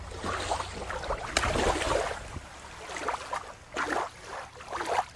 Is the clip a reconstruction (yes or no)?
no